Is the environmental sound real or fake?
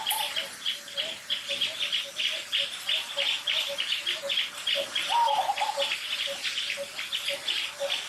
real